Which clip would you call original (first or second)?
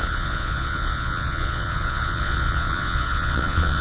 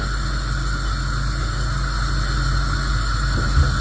second